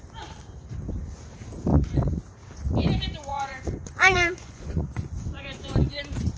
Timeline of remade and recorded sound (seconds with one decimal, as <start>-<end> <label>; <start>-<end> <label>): 0.0-1.7 recorded; 1.7-2.2 remade; 2.2-3.3 recorded; 3.3-6.0 remade; 6.0-6.4 recorded